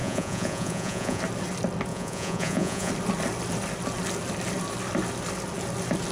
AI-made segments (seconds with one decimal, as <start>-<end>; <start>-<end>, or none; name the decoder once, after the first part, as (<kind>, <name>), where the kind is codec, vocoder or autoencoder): 0.0-1.2 (vocoder, Vocos); 1.9-2.9